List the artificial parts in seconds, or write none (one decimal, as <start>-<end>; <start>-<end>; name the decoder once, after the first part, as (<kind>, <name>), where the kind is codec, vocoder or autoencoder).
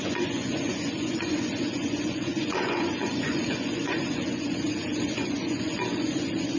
0.0-6.6 (vocoder, Vocos)